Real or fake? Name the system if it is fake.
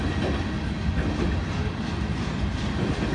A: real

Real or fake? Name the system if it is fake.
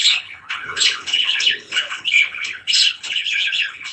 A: fake, codec, HILCodec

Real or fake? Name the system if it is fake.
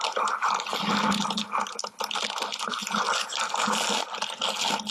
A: real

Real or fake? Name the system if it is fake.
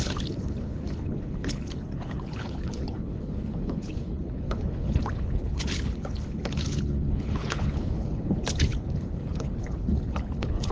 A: fake, codec, HILCodec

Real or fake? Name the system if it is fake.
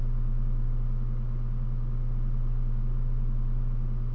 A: real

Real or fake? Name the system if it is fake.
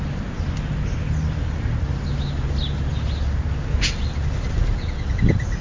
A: real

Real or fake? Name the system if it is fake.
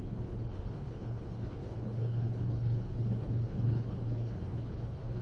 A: fake, codec, HILCodec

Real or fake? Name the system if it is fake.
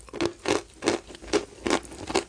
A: real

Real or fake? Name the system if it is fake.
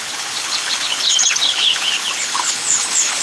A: fake, codec, HILCodec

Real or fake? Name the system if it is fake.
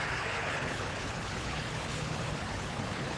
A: fake, codec, HILCodec